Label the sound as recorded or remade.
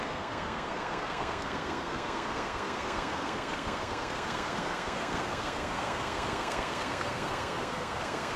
remade